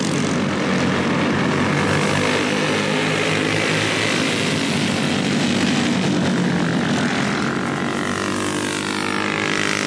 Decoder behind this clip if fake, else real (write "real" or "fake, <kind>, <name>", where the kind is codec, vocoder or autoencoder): real